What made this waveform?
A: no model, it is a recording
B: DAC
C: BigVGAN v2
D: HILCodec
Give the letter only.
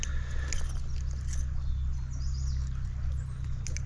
A